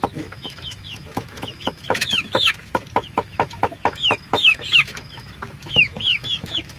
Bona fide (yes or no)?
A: no